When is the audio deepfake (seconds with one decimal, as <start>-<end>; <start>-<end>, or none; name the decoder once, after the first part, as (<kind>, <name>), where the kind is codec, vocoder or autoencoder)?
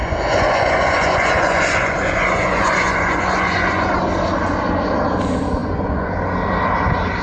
0.0-3.9 (vocoder, Vocos); 5.6-6.1